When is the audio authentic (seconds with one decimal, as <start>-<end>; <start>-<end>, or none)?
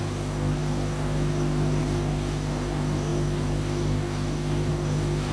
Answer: none